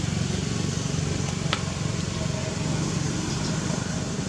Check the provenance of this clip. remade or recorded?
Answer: recorded